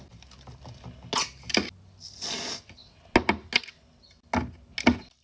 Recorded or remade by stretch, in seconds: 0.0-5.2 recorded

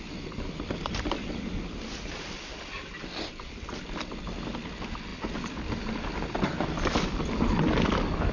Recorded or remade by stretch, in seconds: 0.0-8.3 recorded

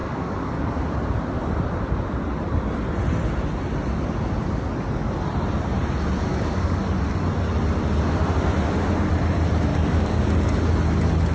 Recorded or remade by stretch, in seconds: 0.0-0.8 remade; 0.8-6.3 recorded; 6.3-6.8 remade; 6.8-9.7 recorded; 9.7-10.3 remade; 10.3-11.3 recorded